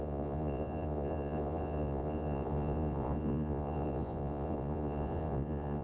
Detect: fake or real fake